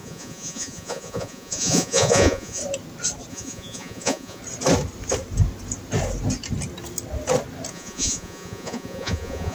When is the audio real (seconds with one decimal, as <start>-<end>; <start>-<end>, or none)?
2.6-3.3; 4.4-7.7